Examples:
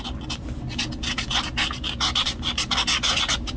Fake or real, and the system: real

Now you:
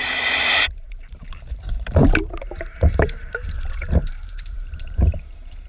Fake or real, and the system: fake, vocoder, BigVGAN v2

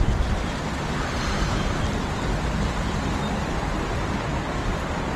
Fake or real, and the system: real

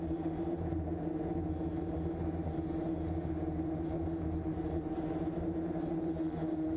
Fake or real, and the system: fake, vocoder, BigVGAN v2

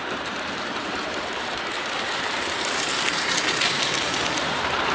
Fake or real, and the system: fake, vocoder, BigVGAN v2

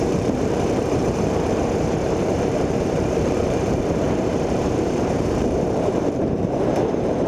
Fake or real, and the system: fake, vocoder, BigVGAN v2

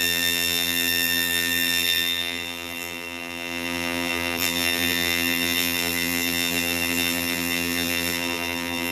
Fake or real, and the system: fake, vocoder, BigVGAN v2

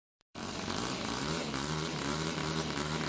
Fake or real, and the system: fake, vocoder, BigVGAN v2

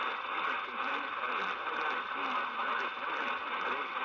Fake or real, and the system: real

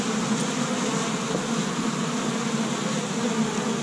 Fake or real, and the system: real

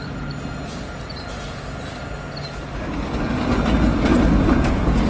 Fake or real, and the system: real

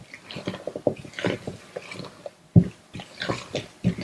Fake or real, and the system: real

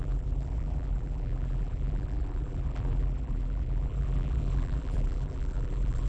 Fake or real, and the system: fake, vocoder, BigVGAN v2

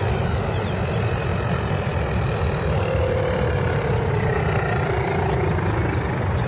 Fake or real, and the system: fake, vocoder, BigVGAN v2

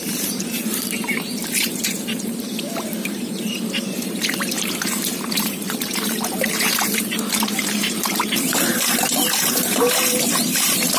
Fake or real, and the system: fake, vocoder, BigVGAN v2